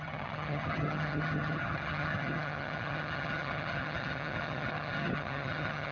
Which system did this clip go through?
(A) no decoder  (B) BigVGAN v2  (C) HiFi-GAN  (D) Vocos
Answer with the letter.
C